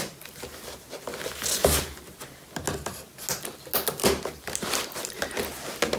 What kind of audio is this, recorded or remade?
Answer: recorded